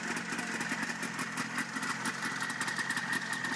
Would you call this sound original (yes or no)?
yes